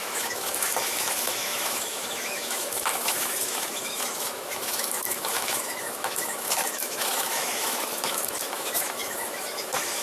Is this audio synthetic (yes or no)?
yes